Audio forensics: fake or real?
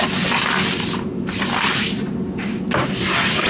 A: real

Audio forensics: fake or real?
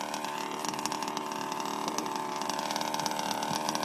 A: real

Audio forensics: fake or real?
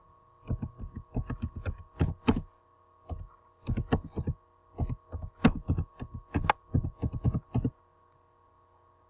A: real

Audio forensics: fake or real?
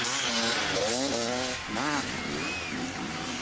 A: real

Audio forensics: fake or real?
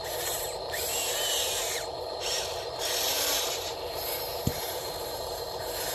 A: fake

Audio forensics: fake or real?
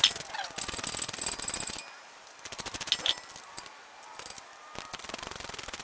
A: real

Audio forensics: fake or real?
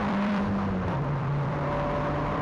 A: fake